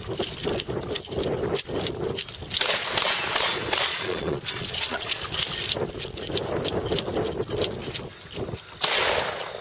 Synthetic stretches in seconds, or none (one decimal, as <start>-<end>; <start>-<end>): 3.9-5.2